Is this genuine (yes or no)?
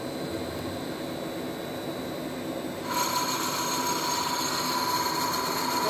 yes